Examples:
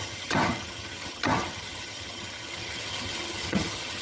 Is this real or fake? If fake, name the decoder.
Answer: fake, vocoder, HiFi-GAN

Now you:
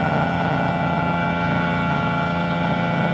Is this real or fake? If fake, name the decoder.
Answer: fake, vocoder, HiFi-GAN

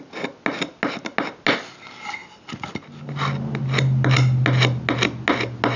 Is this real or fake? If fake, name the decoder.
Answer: real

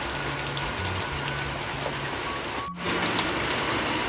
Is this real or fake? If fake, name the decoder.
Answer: real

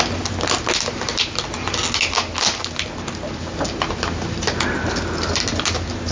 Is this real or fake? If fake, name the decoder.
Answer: real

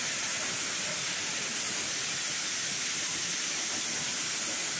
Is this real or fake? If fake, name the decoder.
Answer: real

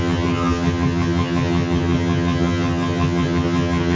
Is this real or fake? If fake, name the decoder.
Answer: fake, vocoder, HiFi-GAN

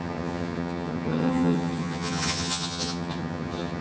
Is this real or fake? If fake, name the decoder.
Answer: fake, vocoder, HiFi-GAN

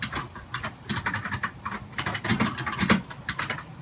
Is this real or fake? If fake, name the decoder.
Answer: real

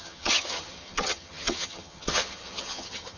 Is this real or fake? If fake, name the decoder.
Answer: fake, vocoder, HiFi-GAN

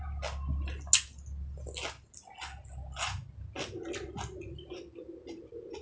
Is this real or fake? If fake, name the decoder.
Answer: real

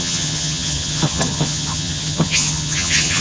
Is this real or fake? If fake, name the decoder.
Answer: fake, vocoder, HiFi-GAN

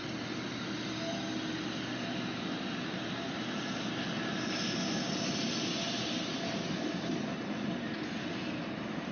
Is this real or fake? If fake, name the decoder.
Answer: real